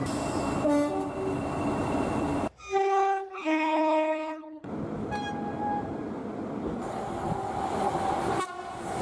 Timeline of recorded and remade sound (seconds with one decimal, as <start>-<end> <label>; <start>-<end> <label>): 0.0-2.8 recorded; 2.8-4.7 remade; 4.7-9.0 recorded